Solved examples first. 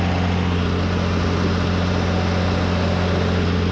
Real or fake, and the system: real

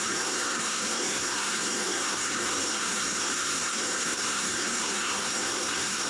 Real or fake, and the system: fake, codec, SNAC